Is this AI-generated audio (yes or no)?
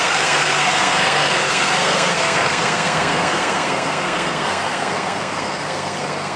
yes